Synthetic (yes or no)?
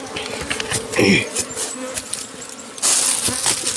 no